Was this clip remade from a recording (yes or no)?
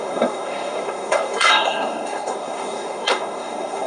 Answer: yes